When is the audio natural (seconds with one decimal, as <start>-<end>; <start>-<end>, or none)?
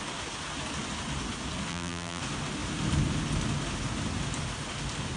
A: 0.0-1.7; 2.2-5.2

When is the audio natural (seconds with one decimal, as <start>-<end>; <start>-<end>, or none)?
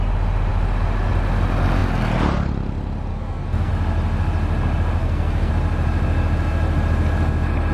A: 0.0-3.1; 3.7-5.0; 5.5-7.7